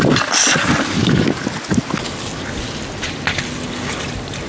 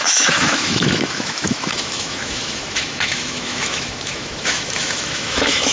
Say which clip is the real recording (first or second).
first